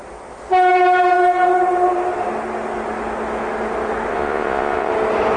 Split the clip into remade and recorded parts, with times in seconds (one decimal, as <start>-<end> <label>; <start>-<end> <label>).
0.0-4.1 recorded; 4.1-4.9 remade; 4.9-5.4 recorded